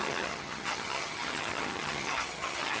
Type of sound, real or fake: fake